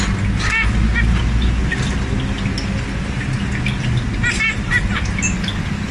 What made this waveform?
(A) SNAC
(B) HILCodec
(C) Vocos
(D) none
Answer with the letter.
D